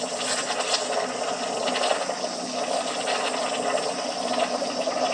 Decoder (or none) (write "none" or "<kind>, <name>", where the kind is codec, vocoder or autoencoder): none